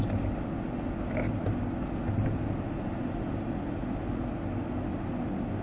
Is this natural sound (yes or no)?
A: yes